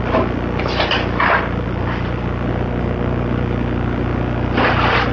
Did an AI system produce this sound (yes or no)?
no